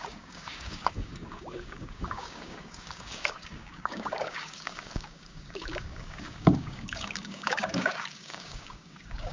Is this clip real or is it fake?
fake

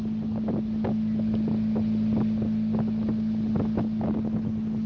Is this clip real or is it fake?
real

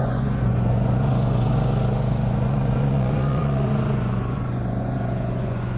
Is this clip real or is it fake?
fake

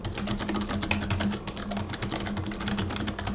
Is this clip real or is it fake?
real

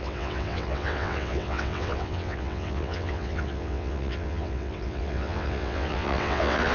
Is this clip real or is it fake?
fake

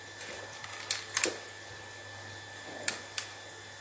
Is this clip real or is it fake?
real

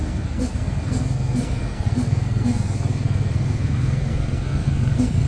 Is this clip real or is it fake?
fake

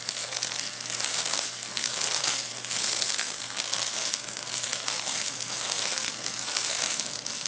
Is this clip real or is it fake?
fake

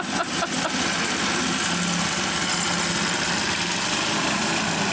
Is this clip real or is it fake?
real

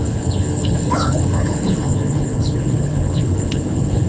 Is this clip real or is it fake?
fake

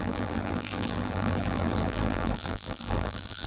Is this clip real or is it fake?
fake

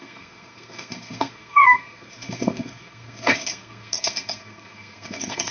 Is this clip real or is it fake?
fake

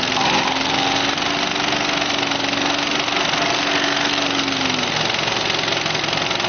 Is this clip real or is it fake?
real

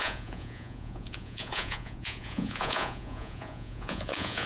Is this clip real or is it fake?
fake